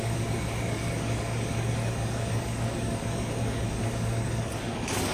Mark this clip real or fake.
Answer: fake